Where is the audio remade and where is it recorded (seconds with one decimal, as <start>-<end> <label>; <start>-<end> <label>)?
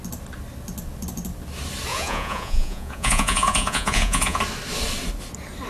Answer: 0.0-1.9 recorded; 1.9-4.4 remade; 4.4-5.7 recorded